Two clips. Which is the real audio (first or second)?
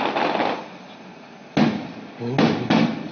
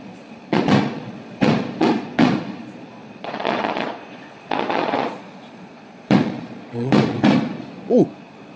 first